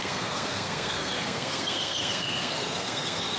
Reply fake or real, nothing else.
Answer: fake